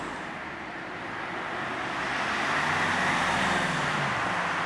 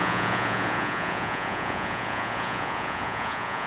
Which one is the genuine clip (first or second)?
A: first